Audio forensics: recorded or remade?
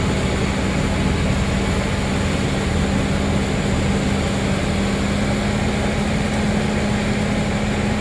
recorded